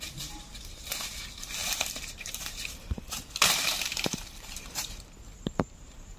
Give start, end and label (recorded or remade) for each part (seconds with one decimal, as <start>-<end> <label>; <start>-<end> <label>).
0.0-6.2 remade